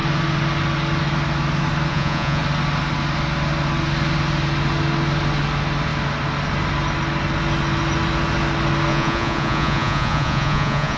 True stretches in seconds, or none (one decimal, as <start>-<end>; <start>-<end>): 0.0-1.9; 2.4-8.9